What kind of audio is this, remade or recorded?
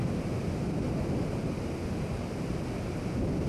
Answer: recorded